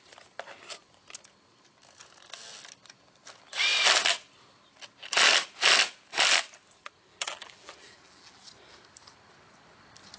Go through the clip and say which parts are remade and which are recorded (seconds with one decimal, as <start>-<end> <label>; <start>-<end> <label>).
0.0-7.1 recorded; 7.1-8.4 remade; 8.4-10.2 recorded